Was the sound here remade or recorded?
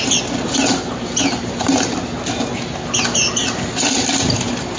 recorded